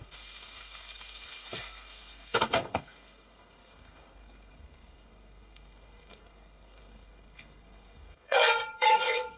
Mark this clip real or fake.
fake